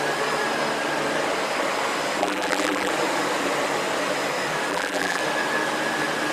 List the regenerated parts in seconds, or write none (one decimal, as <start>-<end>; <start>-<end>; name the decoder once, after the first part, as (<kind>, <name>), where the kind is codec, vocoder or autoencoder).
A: 2.2-2.9 (vocoder, BigVGAN v2); 4.7-5.2